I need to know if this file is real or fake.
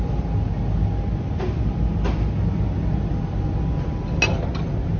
real